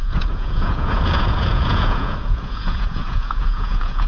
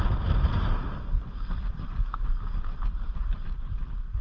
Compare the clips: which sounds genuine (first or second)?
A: second